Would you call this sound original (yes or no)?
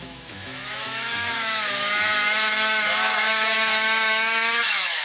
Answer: no